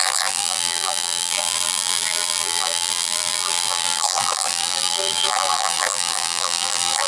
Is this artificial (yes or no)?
yes